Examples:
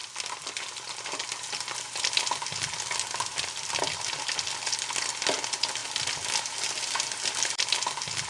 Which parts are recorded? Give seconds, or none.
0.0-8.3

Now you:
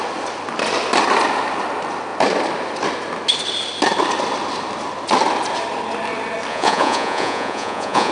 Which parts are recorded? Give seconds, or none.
0.0-6.5

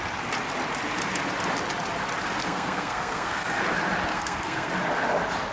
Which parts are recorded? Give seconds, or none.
0.0-2.4; 3.6-4.1; 4.7-5.5

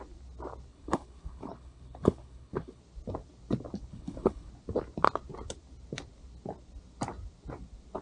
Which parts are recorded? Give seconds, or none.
0.0-0.7; 2.8-3.9; 4.5-8.0

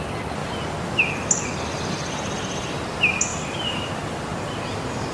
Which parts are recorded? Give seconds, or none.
0.0-3.3; 3.9-4.3